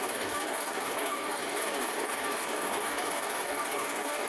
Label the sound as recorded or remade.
remade